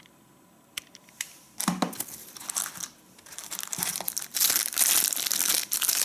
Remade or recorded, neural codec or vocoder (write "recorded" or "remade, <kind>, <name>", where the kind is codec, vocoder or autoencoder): recorded